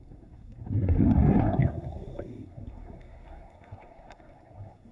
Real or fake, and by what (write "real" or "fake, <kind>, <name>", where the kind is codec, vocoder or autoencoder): fake, codec, SNAC